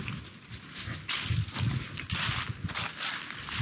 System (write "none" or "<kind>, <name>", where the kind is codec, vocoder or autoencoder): none